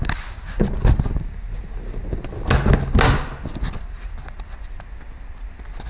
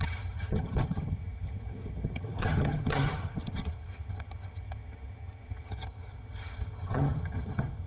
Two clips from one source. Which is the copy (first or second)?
second